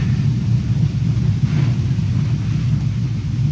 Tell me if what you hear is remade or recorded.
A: recorded